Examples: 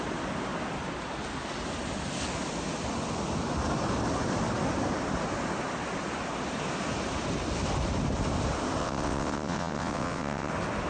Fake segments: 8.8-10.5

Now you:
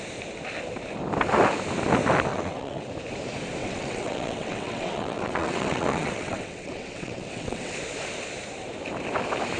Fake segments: 2.3-2.9; 3.6-7.8

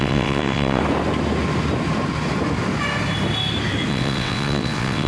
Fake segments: 0.0-0.8; 3.9-5.1

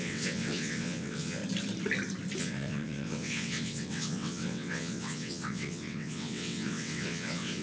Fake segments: 0.0-1.4; 2.4-7.6

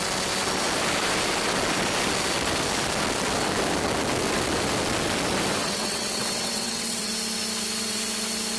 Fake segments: 5.6-7.1

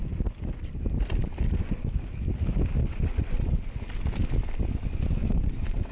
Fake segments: 2.8-3.5; 5.2-5.9